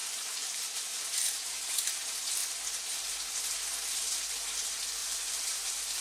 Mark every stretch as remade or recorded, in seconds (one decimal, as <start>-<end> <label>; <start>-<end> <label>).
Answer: 0.0-1.0 remade; 1.0-5.0 recorded; 5.0-6.0 remade

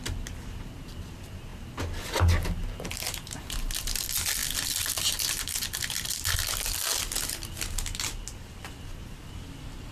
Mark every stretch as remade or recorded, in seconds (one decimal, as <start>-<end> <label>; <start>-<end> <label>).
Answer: 0.0-9.9 recorded

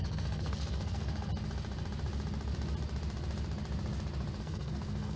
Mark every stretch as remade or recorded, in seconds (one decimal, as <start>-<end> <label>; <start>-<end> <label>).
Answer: 0.0-1.3 remade; 1.3-4.4 recorded; 4.4-5.2 remade

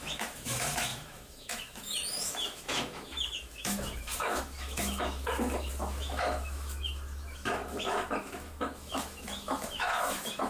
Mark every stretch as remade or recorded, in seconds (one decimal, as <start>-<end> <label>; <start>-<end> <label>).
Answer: 0.0-10.5 remade